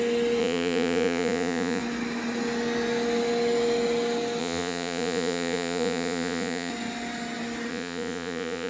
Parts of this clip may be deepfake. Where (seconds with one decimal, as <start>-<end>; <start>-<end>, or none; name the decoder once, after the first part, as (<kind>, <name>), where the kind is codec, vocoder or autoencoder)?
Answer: 0.4-1.8 (vocoder, Vocos); 4.4-6.7; 7.7-8.7

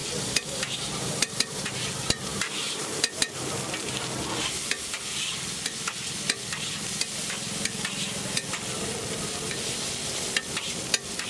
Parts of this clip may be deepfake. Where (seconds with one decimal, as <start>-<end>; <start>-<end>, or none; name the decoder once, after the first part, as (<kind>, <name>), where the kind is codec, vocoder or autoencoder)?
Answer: 0.0-3.5 (vocoder, BigVGAN v2)

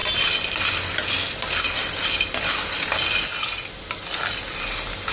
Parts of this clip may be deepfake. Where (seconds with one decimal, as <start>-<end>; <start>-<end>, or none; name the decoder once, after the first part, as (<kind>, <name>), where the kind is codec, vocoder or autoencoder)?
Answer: none